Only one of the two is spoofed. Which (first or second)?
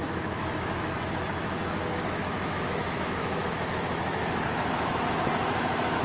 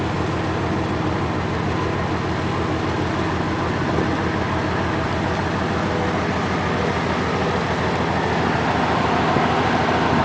first